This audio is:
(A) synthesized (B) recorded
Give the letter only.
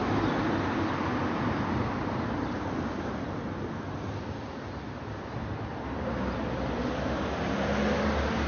B